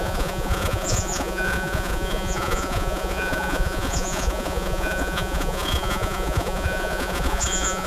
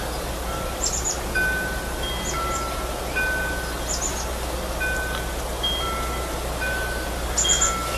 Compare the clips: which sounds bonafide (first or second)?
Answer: second